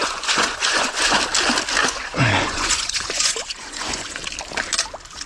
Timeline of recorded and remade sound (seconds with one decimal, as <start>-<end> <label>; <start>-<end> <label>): 0.0-1.2 remade; 1.2-1.8 recorded; 1.8-4.2 remade; 4.2-5.3 recorded